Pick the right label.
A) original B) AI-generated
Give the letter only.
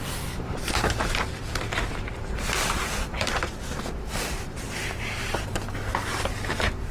B